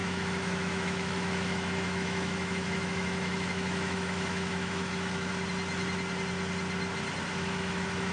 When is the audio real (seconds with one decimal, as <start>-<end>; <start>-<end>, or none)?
5.3-7.4